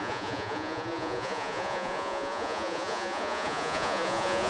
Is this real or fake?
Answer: fake